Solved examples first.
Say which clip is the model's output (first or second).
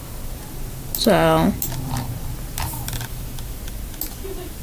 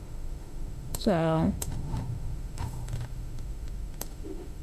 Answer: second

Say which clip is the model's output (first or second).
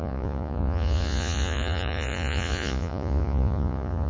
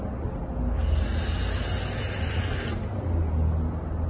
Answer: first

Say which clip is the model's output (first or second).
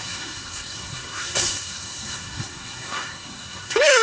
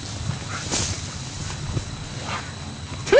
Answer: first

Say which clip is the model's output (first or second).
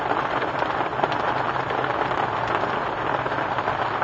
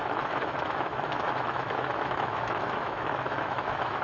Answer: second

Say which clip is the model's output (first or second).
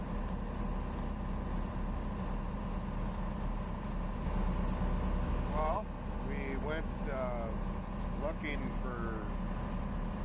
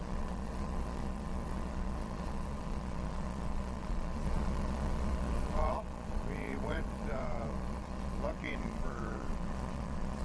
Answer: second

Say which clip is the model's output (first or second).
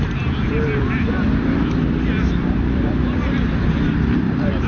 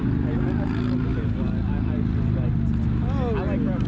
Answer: first